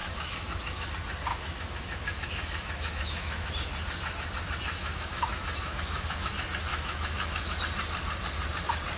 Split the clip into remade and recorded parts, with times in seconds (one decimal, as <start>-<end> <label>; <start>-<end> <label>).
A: 0.0-0.9 remade; 0.9-1.3 recorded; 1.3-3.5 remade; 3.5-4.8 recorded; 4.8-6.3 remade; 6.3-6.7 recorded; 6.7-7.6 remade; 7.6-9.0 recorded